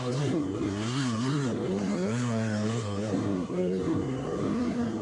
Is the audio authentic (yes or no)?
no